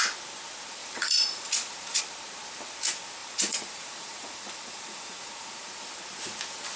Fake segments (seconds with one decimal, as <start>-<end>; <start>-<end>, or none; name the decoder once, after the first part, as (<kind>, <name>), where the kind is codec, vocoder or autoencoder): 0.8-2.0 (vocoder, Vocos); 3.2-5.8

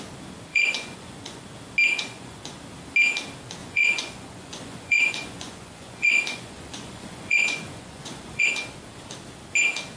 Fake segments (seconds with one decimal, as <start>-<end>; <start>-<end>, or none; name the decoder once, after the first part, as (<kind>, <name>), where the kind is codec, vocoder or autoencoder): 0.5-1.4 (vocoder, Vocos); 1.9-2.6; 3.6-8.5

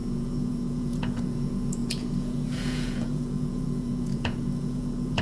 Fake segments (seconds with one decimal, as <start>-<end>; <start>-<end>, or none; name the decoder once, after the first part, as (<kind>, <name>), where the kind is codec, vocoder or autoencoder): 0.0-5.2 (vocoder, Vocos)

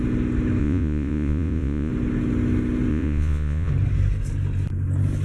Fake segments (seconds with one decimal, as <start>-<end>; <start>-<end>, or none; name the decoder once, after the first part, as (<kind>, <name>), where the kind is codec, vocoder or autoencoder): 0.6-1.9 (vocoder, Vocos); 2.9-3.7

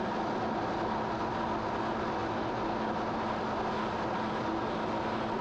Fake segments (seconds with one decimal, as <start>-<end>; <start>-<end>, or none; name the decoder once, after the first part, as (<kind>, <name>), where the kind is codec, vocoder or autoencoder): none

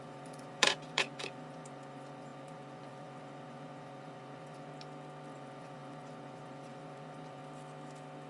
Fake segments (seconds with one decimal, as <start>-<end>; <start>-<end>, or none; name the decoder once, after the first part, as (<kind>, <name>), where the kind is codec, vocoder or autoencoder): 0.0-4.7 (vocoder, Vocos); 5.3-7.4